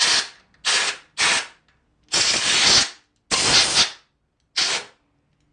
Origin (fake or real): real